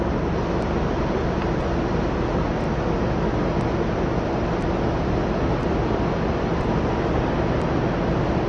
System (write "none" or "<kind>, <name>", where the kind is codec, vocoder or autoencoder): none